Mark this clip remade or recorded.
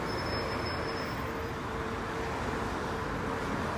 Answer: remade